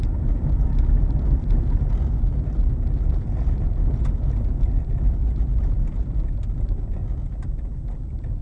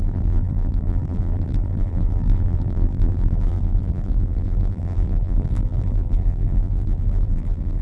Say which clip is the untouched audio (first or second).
first